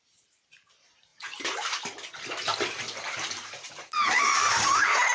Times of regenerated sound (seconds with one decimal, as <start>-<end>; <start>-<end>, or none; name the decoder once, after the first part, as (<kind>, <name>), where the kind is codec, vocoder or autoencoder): 0.0-5.1 (vocoder, BigVGAN v2)